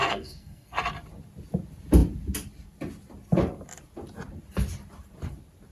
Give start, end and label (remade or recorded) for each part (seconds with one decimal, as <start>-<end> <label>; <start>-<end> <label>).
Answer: 0.0-0.8 remade; 0.8-5.7 recorded